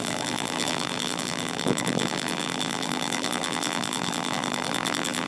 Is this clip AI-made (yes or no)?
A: yes